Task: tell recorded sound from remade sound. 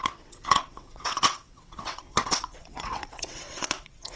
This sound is remade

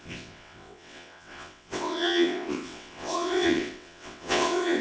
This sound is remade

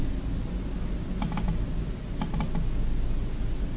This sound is recorded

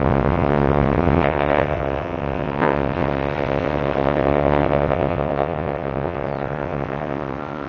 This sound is remade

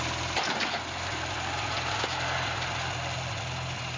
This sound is recorded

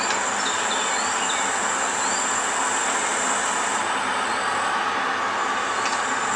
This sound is recorded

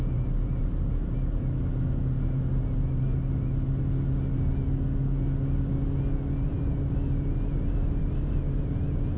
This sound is recorded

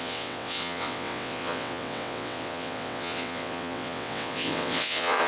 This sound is remade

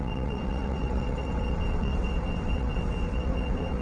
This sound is remade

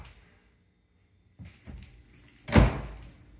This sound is recorded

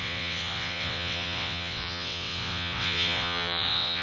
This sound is remade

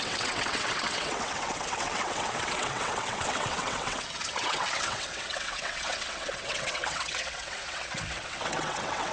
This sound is remade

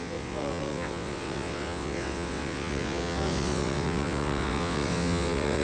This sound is remade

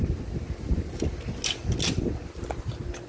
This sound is recorded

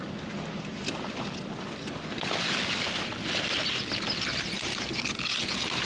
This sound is recorded